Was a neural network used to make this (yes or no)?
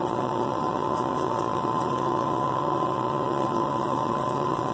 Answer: yes